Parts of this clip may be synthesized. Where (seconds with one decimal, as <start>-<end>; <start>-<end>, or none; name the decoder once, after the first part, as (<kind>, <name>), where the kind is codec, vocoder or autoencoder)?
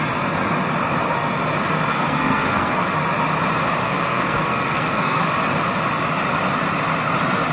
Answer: 1.9-2.8 (codec, SNAC); 3.8-5.2